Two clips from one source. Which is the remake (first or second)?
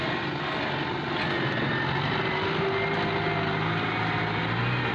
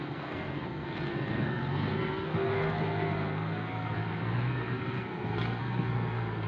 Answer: second